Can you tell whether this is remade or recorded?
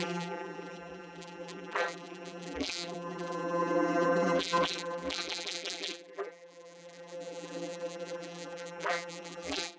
remade